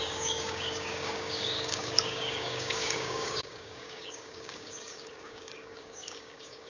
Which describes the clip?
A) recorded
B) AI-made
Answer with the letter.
B